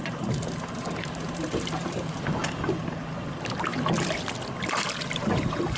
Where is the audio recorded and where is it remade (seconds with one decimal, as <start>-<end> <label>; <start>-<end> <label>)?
0.0-1.0 recorded; 1.0-3.7 remade; 3.7-5.0 recorded; 5.0-5.8 remade